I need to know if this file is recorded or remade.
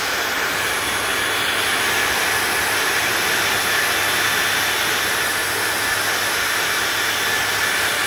recorded